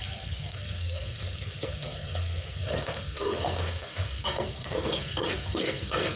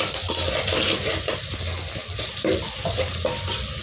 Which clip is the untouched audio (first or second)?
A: second